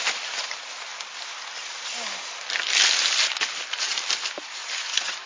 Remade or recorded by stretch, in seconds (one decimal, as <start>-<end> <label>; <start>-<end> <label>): 0.0-0.9 remade; 0.9-3.0 recorded; 3.0-4.6 remade; 4.6-5.3 recorded